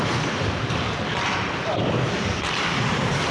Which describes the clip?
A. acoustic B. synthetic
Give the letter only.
B